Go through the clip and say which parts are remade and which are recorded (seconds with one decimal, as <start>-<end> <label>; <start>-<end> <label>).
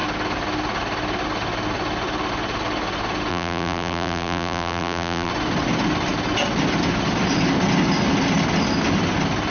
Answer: 0.0-3.3 recorded; 3.3-5.3 remade; 5.3-9.5 recorded